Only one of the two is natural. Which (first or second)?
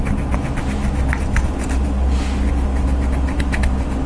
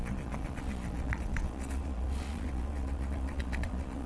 first